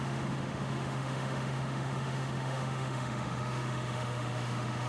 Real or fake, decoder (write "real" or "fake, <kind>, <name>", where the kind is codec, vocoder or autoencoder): fake, autoencoder, DAC-VAE